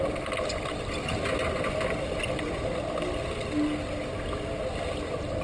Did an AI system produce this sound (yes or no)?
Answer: no